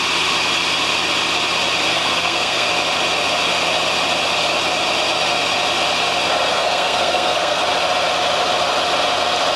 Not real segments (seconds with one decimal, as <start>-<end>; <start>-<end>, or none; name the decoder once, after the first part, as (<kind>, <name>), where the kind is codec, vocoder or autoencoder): 1.9-2.7 (codec, SNAC); 6.5-7.6